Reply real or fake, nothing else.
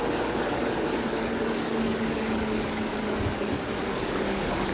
fake